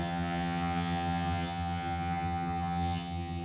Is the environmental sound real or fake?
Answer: fake